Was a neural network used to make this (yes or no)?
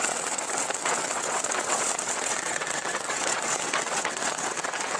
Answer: yes